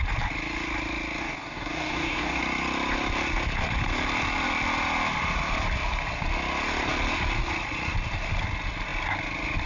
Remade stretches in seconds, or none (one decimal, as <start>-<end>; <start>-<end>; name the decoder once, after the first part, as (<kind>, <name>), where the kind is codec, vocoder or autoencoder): 1.2-2.4 (codec, DAC)